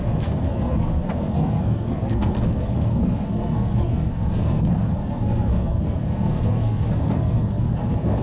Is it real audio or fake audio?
fake